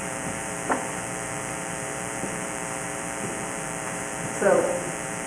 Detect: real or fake fake